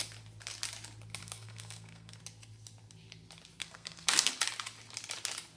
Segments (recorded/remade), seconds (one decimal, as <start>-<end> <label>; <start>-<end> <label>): 0.0-1.2 recorded; 1.2-2.2 remade; 2.2-3.6 recorded; 3.6-4.3 remade; 4.3-5.6 recorded